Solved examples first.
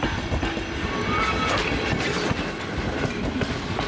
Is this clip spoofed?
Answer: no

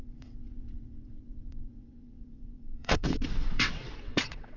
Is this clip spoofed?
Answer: yes